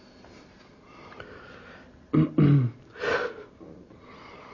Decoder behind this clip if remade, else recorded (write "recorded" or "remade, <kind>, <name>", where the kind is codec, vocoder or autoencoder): recorded